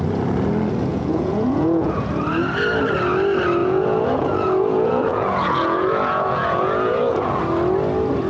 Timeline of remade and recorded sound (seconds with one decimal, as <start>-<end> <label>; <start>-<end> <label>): 0.0-0.9 recorded; 0.9-2.1 remade; 2.1-3.6 recorded; 3.6-7.4 remade; 7.4-8.3 recorded